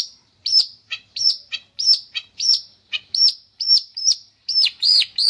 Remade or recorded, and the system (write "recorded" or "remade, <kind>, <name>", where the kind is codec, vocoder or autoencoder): remade, vocoder, BigVGAN v2